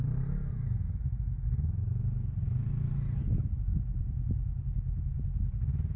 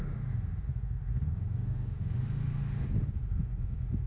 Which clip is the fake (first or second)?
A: second